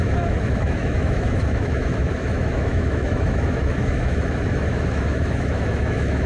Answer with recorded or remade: remade